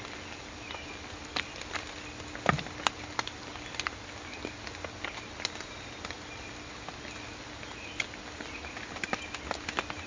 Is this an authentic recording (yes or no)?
yes